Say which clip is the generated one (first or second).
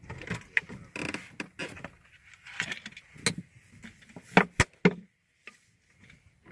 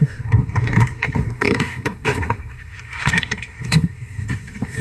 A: second